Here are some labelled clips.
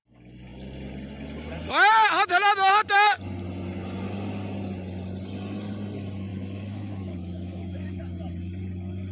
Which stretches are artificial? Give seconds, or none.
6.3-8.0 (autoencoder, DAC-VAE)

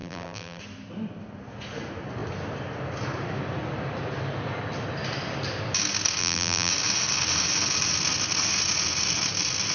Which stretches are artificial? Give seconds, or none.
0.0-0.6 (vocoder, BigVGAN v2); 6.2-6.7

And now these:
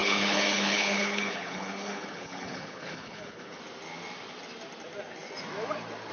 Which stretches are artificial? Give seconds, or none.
0.0-3.6 (codec, HILCodec)